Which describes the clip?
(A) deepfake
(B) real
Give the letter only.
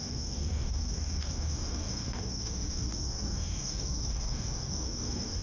A